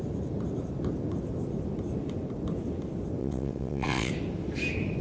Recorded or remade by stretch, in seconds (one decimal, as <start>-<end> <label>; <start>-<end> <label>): 0.0-3.2 recorded; 3.2-4.1 remade; 4.1-5.0 recorded